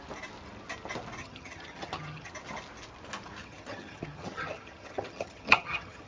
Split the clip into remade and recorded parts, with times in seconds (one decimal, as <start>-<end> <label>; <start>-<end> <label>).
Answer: 0.0-1.2 recorded; 1.2-2.3 remade; 2.3-3.4 recorded; 3.4-6.1 remade